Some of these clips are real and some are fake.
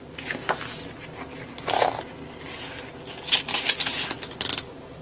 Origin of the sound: real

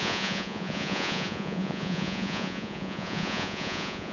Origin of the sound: fake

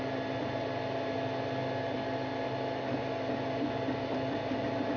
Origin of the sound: real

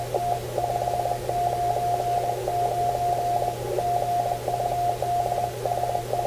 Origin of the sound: real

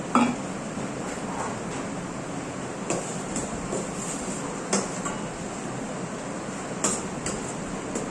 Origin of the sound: real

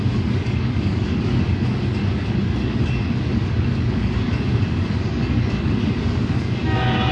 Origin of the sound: fake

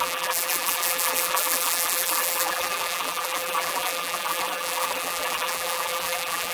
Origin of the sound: fake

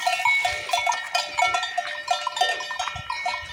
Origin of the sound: real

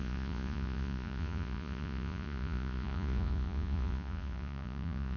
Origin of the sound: fake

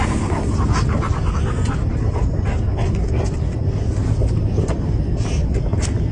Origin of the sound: real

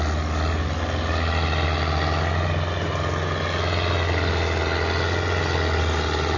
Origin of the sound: real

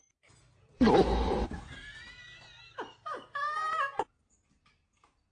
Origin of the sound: real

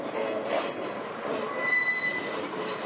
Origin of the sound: real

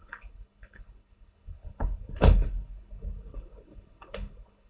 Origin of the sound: fake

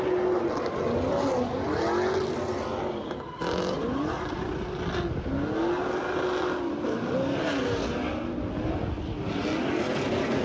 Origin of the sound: real